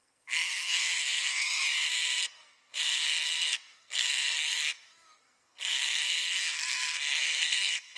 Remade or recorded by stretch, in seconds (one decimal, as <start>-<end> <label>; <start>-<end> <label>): 0.0-1.5 remade; 1.5-2.2 recorded; 2.2-8.0 remade